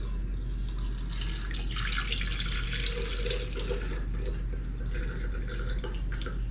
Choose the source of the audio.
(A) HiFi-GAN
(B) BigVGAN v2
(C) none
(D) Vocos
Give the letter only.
C